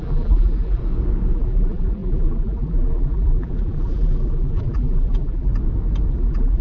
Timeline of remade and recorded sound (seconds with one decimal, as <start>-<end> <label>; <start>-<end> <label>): 0.0-0.8 remade; 0.8-1.3 recorded; 1.3-5.5 remade; 5.5-6.1 recorded; 6.1-6.6 remade